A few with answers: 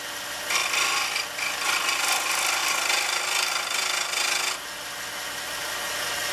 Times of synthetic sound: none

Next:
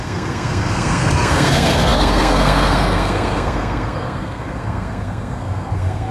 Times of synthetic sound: 0.0-6.1 (codec, SNAC)

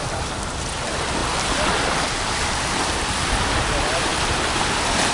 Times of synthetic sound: 0.0-4.1 (vocoder, BigVGAN v2); 4.6-5.1

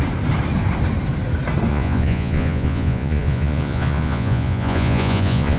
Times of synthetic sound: 1.7-5.6 (vocoder, Vocos)

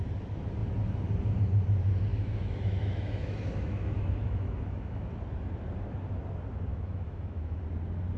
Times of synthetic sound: 2.1-5.1 (autoencoder, DAC-VAE); 6.7-7.6

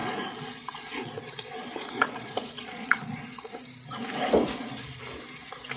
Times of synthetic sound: 0.0-3.5 (vocoder, Vocos)

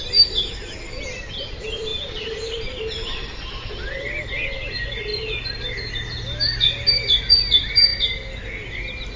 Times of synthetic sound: 1.9-3.7 (vocoder, BigVGAN v2)

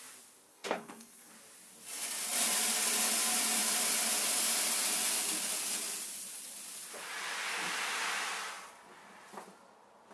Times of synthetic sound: 0.5-1.3 (codec, SNAC)